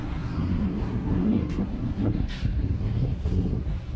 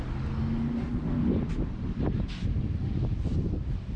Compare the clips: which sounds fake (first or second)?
first